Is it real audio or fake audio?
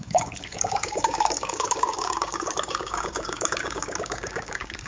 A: fake